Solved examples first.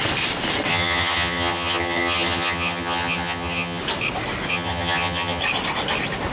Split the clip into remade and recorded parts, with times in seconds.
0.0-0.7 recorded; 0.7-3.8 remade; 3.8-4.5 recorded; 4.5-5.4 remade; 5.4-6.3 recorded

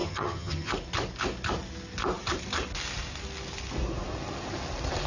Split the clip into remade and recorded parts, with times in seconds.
0.0-0.7 remade; 0.7-5.1 recorded

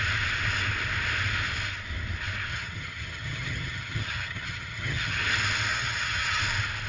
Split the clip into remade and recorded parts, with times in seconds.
0.0-2.5 recorded; 2.5-5.2 remade; 5.2-5.7 recorded; 5.7-6.4 remade; 6.4-6.9 recorded

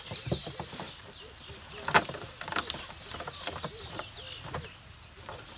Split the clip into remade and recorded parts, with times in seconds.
0.0-5.6 recorded

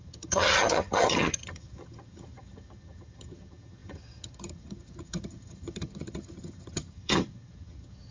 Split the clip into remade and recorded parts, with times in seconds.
0.0-8.1 remade